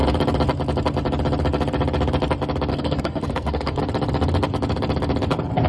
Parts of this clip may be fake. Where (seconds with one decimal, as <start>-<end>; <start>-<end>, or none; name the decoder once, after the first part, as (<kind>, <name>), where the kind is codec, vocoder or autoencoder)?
2.7-3.8 (codec, SNAC)